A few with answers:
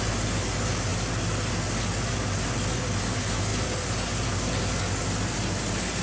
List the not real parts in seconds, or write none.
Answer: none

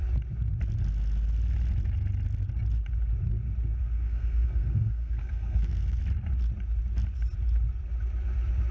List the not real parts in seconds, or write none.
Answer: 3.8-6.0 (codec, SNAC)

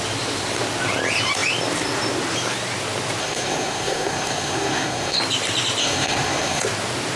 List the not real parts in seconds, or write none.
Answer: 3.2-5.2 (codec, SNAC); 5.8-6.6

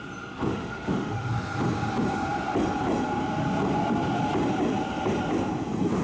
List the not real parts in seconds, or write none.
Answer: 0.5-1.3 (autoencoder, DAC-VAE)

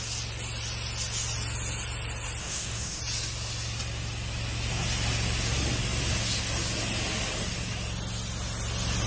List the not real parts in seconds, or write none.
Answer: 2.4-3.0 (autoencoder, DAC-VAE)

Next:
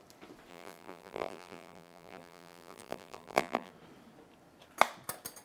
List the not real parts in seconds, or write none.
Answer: 0.5-3.7 (vocoder, BigVGAN v2)

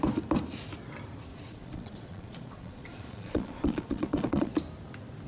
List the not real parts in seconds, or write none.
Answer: 1.3-4.5 (vocoder, Vocos)

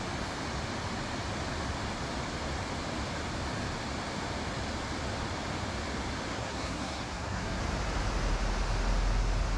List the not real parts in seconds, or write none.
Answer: 6.3-7.6 (codec, SNAC)